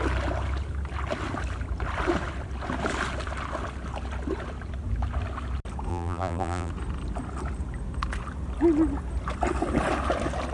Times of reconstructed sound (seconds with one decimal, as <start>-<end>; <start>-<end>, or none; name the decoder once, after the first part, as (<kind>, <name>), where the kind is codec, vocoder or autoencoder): 5.9-6.7 (vocoder, BigVGAN v2)